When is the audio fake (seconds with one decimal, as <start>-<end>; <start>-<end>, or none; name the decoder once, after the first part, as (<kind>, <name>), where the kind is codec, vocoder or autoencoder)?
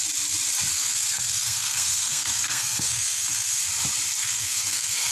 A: 0.7-3.6 (codec, SNAC); 4.2-5.1